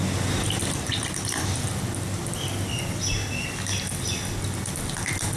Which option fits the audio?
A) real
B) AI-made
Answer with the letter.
A